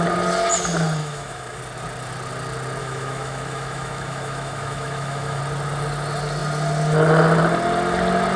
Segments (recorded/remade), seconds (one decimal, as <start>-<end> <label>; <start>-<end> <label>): 0.0-1.0 recorded; 1.0-1.6 remade; 1.6-2.8 recorded; 2.8-5.4 remade; 5.4-8.4 recorded